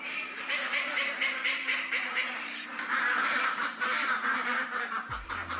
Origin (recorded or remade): remade